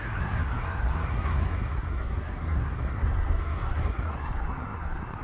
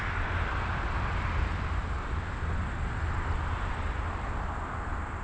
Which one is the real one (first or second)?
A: second